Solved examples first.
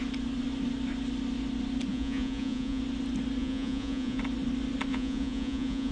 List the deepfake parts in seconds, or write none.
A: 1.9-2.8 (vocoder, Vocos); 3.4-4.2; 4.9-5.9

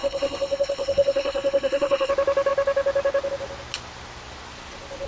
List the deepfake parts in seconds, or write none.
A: 0.0-2.1 (codec, SNAC)

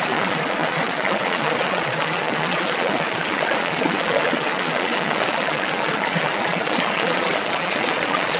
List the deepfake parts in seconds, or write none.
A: 0.0-8.4 (vocoder, Vocos)

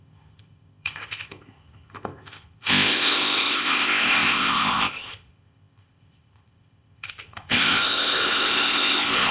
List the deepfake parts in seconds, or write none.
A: 0.0-9.3 (codec, ZipCodec)

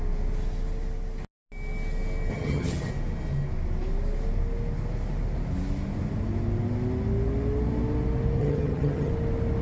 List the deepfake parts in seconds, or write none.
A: 2.3-2.9 (vocoder, HiFi-GAN); 8.4-9.1